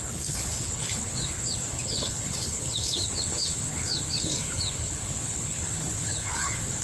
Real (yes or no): no